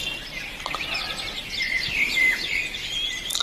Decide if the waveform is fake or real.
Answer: real